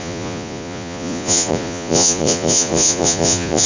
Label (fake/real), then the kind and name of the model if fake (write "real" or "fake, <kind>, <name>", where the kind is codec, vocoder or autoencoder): fake, vocoder, Vocos